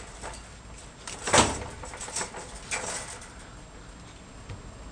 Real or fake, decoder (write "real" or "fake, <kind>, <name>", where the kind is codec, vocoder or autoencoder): real